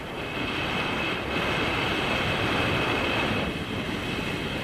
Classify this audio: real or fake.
real